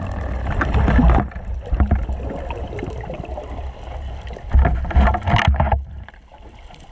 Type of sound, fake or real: real